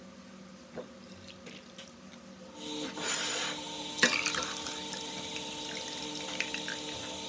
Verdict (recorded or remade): recorded